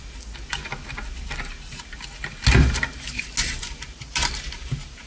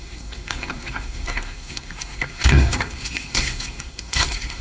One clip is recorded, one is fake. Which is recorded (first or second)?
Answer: first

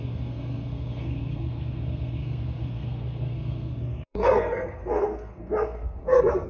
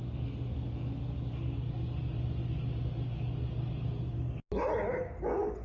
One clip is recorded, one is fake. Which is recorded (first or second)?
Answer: second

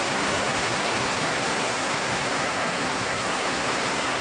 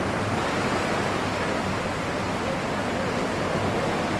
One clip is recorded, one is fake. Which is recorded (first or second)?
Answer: second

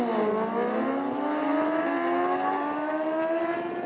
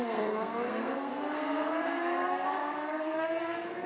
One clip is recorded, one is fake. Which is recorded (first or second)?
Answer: first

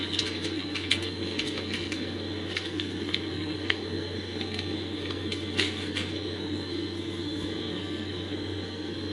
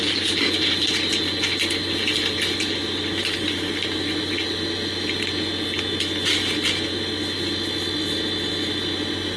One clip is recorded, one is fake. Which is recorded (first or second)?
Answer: second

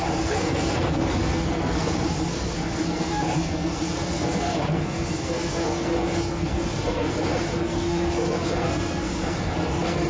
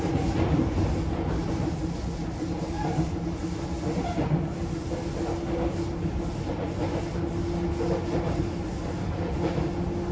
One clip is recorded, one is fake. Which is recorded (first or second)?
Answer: second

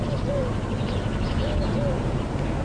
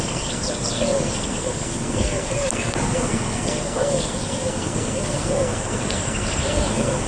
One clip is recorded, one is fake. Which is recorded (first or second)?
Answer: first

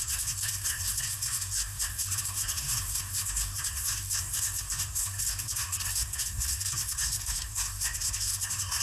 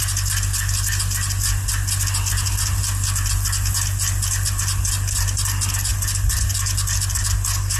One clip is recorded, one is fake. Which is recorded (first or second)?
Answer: second